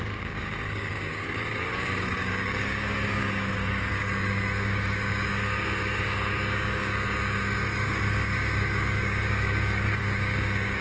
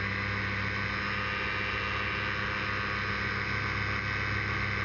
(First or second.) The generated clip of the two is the first